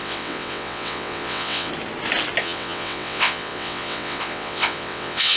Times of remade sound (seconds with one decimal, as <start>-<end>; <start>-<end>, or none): 0.0-1.7; 2.4-5.4